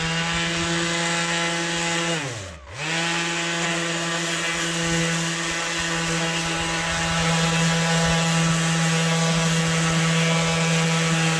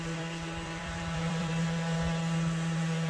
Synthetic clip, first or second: second